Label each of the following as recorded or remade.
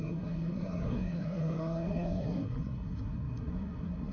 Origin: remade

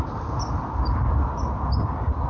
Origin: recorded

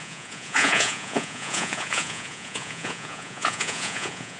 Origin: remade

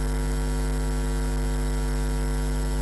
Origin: recorded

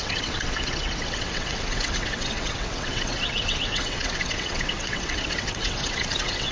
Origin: remade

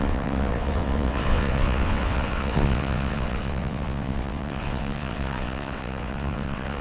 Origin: remade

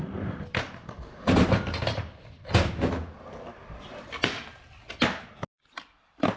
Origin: recorded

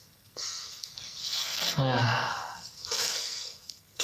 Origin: remade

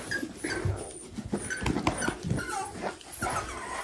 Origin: recorded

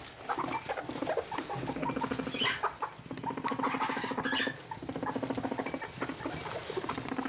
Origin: recorded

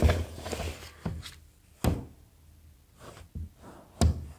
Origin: recorded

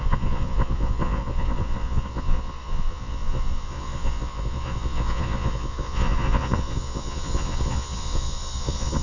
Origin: remade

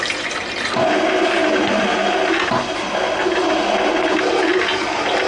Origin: recorded